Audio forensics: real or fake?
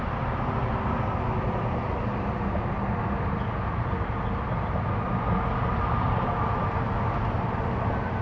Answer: real